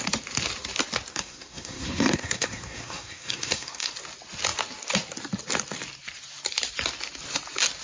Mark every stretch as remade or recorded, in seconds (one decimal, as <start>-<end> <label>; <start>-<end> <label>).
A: 0.0-1.1 recorded; 1.1-3.9 remade; 3.9-7.8 recorded